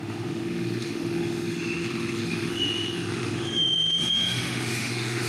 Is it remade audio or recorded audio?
remade